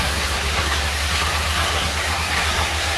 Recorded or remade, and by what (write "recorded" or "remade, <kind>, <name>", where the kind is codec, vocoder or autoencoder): remade, codec, SNAC